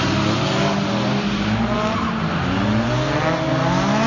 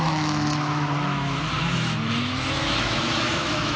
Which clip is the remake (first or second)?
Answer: second